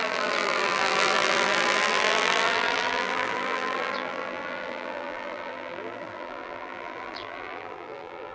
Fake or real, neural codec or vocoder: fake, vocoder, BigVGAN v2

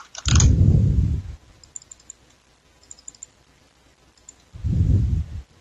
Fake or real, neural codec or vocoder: real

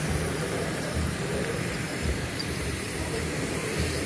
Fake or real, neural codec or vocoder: fake, vocoder, BigVGAN v2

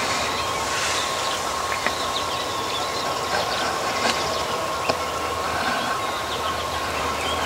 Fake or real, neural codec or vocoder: fake, vocoder, BigVGAN v2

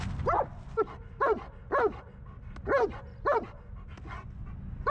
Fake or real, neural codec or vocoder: real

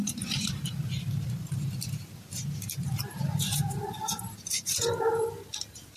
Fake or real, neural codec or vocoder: fake, vocoder, BigVGAN v2